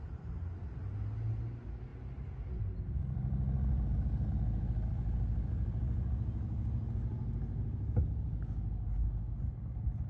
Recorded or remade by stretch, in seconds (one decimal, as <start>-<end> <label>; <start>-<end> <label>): 0.0-10.1 recorded